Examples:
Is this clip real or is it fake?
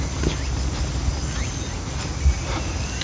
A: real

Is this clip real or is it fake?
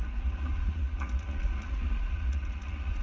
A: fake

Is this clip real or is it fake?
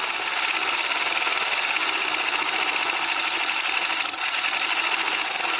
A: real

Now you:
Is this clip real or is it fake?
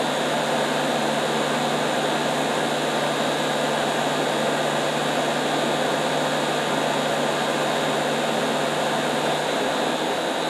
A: real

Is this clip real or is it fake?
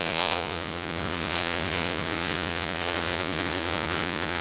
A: fake